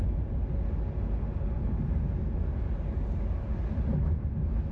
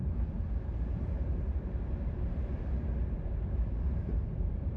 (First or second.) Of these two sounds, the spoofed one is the second